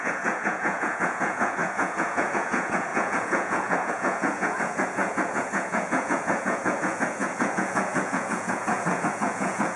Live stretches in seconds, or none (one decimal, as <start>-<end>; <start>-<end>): none